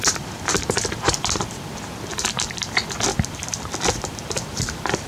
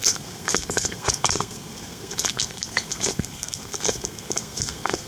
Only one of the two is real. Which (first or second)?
first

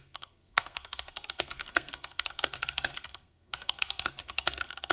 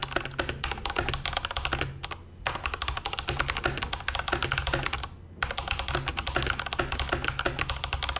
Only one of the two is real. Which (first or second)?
second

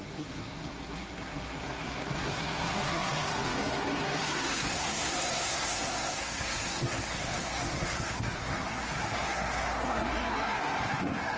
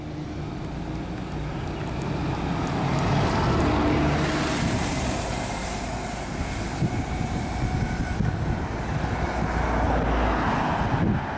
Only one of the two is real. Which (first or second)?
second